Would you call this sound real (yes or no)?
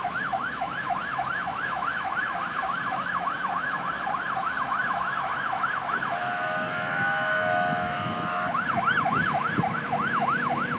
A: no